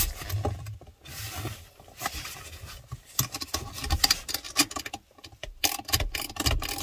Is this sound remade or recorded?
recorded